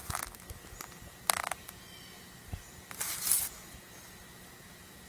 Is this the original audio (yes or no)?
yes